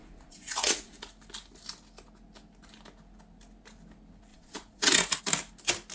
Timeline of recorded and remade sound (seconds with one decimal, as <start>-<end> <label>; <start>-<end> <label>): 0.0-0.9 remade; 0.9-4.3 recorded; 4.3-5.2 remade; 5.2-5.9 recorded